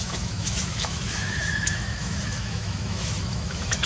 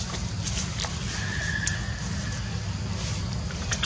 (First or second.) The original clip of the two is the second